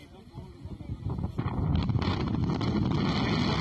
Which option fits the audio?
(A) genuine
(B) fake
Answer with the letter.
A